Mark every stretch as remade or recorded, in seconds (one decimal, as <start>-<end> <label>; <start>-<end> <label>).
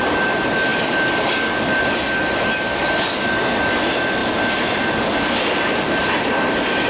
0.0-6.9 recorded